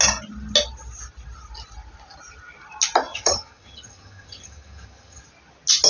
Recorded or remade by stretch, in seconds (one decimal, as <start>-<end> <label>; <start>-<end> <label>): 0.0-3.1 recorded; 3.1-5.2 remade; 5.2-5.9 recorded

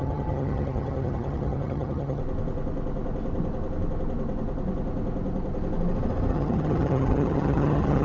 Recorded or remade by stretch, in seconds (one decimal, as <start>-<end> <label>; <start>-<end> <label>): 0.0-2.2 remade; 2.2-6.3 recorded; 6.3-8.0 remade

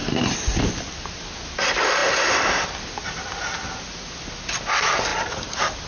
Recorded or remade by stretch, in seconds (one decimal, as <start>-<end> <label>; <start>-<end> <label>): 0.0-5.9 recorded

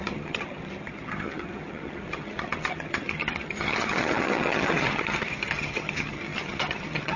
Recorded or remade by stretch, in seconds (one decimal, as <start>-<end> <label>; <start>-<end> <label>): 0.0-7.2 remade

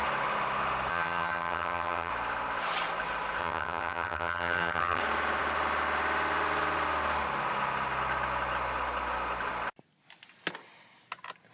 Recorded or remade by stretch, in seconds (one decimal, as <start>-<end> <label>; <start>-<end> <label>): 0.0-0.9 recorded; 0.9-2.1 remade; 2.1-3.4 recorded; 3.4-5.0 remade; 5.0-11.5 recorded

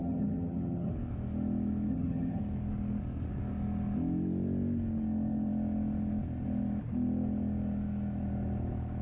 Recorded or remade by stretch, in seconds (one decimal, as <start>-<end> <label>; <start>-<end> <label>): 0.0-0.9 remade; 0.9-1.9 recorded; 1.9-2.4 remade; 2.4-9.0 recorded